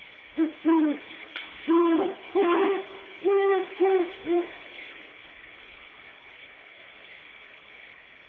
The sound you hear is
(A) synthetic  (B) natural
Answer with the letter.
A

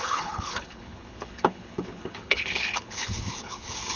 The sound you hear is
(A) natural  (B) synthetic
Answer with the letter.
B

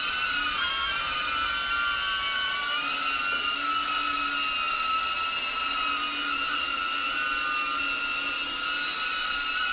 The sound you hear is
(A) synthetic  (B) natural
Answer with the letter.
B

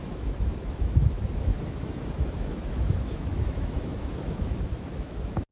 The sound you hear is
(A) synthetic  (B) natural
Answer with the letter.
A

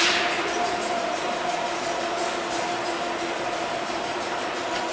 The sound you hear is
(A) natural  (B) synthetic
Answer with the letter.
A